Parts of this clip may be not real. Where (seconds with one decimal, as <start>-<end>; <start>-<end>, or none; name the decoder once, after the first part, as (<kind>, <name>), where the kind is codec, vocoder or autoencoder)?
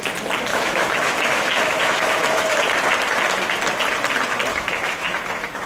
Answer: 0.5-2.6 (autoencoder, DAC-VAE); 4.5-5.7